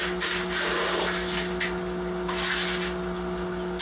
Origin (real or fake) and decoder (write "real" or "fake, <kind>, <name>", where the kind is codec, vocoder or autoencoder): real